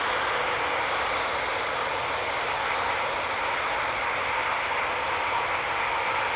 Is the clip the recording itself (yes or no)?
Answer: yes